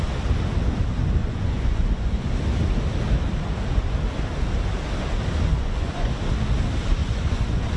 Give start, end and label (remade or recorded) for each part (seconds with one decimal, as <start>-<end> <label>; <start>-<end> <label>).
0.0-1.2 recorded; 1.2-2.3 remade; 2.3-5.5 recorded; 5.5-6.1 remade; 6.1-7.0 recorded; 7.0-7.8 remade